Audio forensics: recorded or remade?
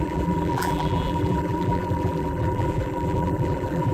remade